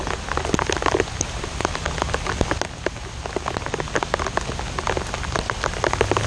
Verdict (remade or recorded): recorded